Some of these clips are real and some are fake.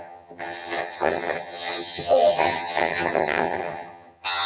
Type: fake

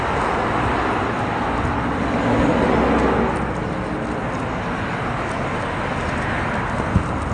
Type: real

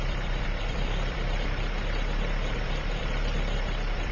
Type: fake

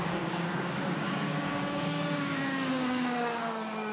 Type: fake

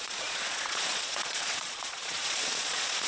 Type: fake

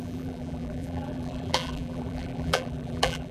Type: fake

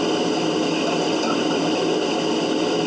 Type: real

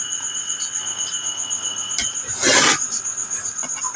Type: real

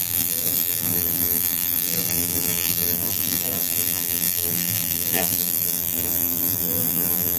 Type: fake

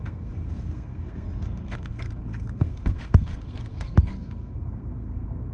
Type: fake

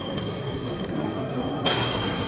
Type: fake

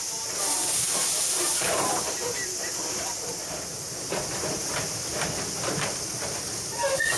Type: real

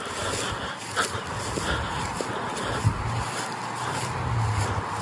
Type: real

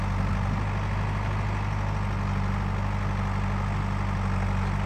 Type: real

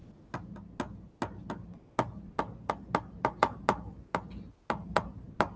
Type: real